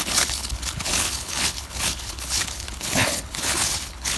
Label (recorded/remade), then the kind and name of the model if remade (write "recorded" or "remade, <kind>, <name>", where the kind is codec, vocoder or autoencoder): remade, codec, HILCodec